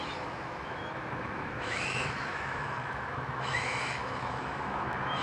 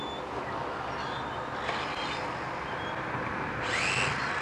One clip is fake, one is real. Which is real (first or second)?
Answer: second